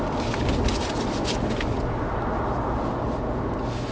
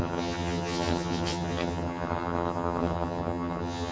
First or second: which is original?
first